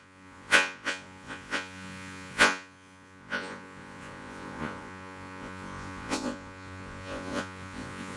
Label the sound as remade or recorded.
remade